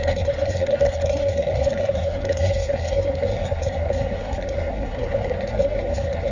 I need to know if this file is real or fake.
fake